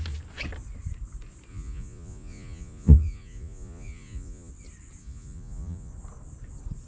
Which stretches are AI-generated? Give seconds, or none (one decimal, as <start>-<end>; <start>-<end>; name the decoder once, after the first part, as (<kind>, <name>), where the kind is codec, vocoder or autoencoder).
1.5-4.5 (vocoder, Vocos); 5.0-5.9